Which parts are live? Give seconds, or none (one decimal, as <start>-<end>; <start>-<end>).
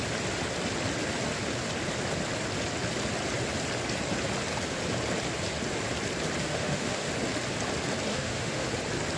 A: 0.0-6.4; 7.1-8.1; 8.7-9.2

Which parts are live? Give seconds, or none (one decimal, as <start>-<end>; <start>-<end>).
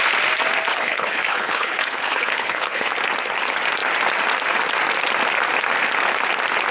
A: 0.0-0.7; 2.9-6.7